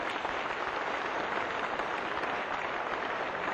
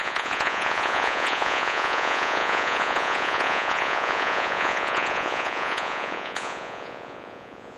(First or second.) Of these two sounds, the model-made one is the second